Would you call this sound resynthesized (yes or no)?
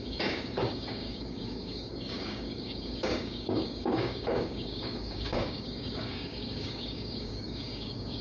yes